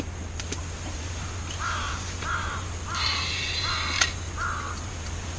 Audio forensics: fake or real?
real